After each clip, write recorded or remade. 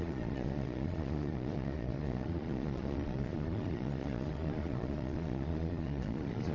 remade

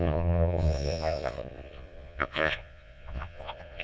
remade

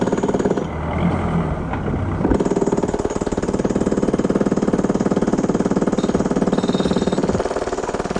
recorded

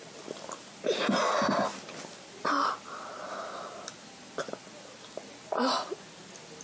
recorded